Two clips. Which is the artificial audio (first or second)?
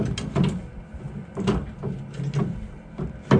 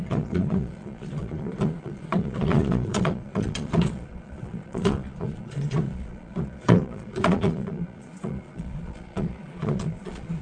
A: second